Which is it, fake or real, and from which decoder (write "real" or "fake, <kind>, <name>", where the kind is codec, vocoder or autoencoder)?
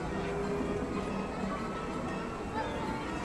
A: real